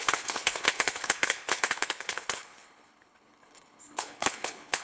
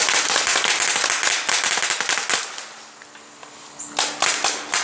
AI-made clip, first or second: first